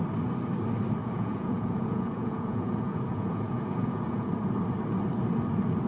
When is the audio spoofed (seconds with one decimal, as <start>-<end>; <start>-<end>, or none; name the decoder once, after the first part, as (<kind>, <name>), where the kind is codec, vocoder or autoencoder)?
1.0-4.3 (vocoder, Vocos)